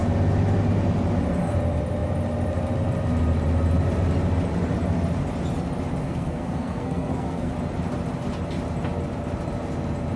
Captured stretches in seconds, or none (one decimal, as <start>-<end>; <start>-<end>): 0.0-6.0; 7.5-10.2